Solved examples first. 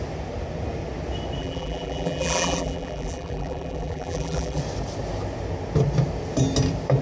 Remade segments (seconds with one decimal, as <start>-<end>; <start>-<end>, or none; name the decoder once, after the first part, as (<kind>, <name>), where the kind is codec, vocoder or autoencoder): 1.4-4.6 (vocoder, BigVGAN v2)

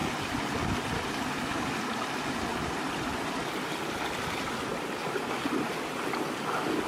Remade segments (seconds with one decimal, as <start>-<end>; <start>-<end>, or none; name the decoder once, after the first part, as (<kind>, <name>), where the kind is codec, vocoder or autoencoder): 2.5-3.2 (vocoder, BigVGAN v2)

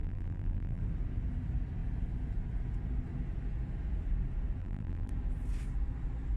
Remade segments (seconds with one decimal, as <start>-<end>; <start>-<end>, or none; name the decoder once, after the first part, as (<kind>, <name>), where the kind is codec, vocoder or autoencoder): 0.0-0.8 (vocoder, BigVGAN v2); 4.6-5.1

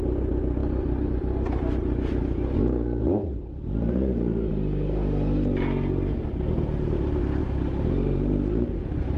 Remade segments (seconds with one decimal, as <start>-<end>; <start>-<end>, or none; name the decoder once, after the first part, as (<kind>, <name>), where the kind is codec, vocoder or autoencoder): 3.0-4.5 (vocoder, BigVGAN v2); 7.4-8.5